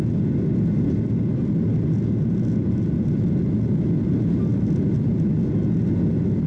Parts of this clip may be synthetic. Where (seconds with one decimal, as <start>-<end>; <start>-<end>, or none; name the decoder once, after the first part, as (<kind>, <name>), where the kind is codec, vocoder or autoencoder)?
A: none